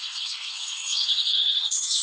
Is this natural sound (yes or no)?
no